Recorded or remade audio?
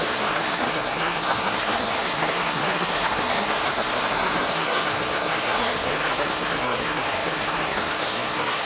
remade